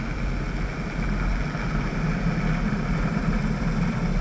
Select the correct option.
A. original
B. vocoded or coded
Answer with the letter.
A